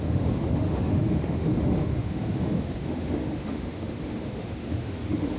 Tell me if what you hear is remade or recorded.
remade